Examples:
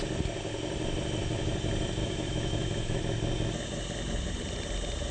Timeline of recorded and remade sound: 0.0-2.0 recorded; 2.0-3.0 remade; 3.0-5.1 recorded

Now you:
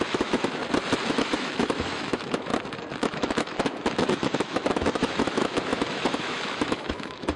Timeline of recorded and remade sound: 0.0-0.6 remade; 0.6-1.1 recorded; 1.1-2.5 remade; 2.5-3.0 recorded; 3.0-7.4 remade

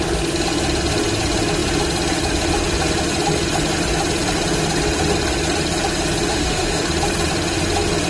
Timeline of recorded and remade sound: 0.0-6.3 recorded; 6.3-6.8 remade; 6.8-8.1 recorded

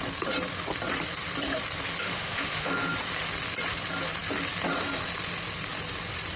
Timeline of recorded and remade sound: 0.0-2.0 recorded; 2.0-2.9 remade; 2.9-6.4 recorded

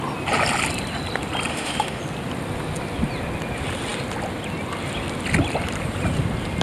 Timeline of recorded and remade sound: 0.0-1.5 recorded; 1.5-2.0 remade; 2.0-6.6 recorded

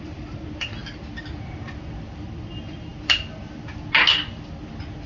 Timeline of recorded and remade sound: 0.0-5.1 recorded

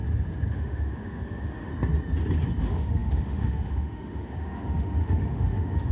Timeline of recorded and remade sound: 0.0-0.5 recorded; 0.5-1.7 remade; 1.7-2.6 recorded; 2.6-5.9 remade

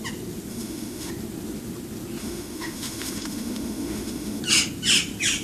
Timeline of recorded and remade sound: 0.0-0.5 recorded; 0.5-1.1 remade; 1.1-2.2 recorded; 2.2-4.4 remade; 4.4-5.4 recorded